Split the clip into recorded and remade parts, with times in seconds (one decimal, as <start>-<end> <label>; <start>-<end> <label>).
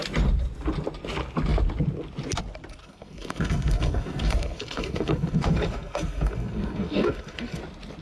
0.0-2.8 recorded; 2.8-7.6 remade; 7.6-8.0 recorded